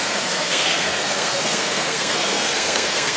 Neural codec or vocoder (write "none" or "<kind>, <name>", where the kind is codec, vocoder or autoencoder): codec, SNAC